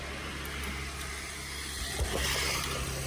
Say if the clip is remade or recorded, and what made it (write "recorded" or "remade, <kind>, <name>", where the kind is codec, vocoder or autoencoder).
recorded